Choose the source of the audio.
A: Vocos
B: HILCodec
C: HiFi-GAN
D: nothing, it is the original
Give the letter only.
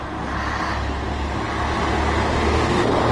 D